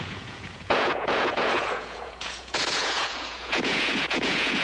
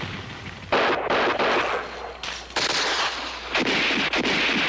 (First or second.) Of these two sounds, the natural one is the second